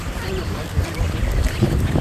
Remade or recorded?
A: recorded